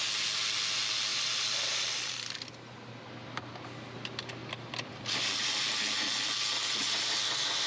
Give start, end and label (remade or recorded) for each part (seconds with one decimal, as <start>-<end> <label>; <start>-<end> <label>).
0.0-1.1 recorded; 1.1-2.5 remade; 2.5-4.4 recorded; 4.4-5.6 remade; 5.6-7.7 recorded